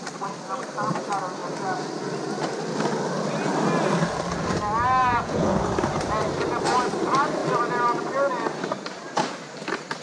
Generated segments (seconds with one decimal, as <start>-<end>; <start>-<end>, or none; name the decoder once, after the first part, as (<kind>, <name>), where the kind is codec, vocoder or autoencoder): 5.0-5.6 (vocoder, Vocos)